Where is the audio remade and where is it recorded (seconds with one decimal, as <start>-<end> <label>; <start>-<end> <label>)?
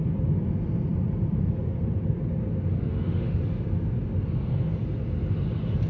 0.0-2.7 recorded; 2.7-3.4 remade; 3.4-5.9 recorded